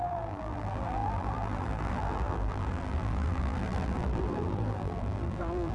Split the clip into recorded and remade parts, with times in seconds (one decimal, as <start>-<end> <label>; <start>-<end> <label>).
0.0-5.7 remade